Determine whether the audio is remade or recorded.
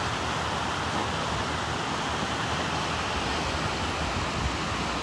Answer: recorded